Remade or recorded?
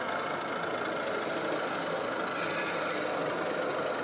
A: recorded